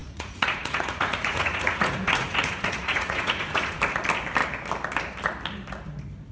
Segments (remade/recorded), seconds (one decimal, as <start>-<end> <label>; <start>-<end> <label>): 0.0-3.8 remade; 3.8-6.3 recorded

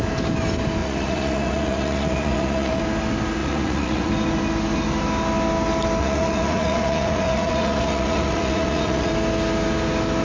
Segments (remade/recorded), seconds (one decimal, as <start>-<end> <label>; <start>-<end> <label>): 0.0-0.8 recorded; 0.8-2.8 remade; 2.8-3.4 recorded; 3.4-4.1 remade; 4.1-6.0 recorded; 6.0-9.1 remade; 9.1-10.2 recorded

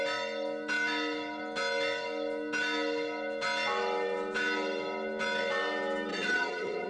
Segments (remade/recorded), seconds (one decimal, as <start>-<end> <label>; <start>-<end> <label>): 0.0-6.1 recorded; 6.1-6.9 remade

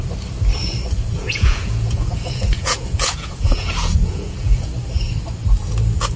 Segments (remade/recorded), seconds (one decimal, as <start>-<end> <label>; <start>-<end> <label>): 0.0-1.2 recorded; 1.2-4.7 remade; 4.7-6.2 recorded

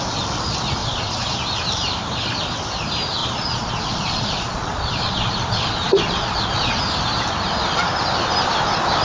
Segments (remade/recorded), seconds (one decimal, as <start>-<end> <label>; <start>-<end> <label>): 0.0-0.8 recorded; 0.8-1.4 remade; 1.4-3.2 recorded; 3.2-6.8 remade; 6.8-9.0 recorded